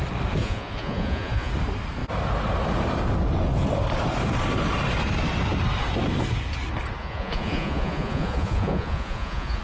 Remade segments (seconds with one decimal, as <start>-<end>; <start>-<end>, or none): 0.4-1.5; 7.0-9.6